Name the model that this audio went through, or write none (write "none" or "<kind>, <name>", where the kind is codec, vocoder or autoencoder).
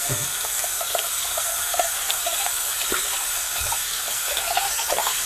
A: codec, SNAC